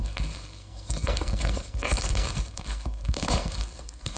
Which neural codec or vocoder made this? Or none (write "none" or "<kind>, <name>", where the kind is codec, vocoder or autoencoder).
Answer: codec, SNAC